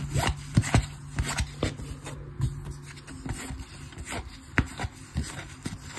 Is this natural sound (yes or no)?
yes